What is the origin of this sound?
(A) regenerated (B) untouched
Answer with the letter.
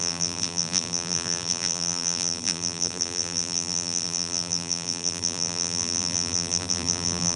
A